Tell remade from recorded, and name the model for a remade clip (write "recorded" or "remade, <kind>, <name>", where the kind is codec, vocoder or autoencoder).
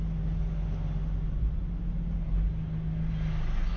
recorded